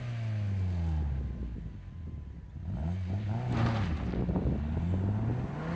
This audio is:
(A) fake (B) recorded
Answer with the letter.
B